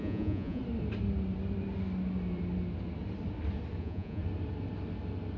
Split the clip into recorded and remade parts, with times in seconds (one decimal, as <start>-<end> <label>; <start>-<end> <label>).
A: 0.0-0.6 remade; 0.6-3.8 recorded; 3.8-4.2 remade; 4.2-5.4 recorded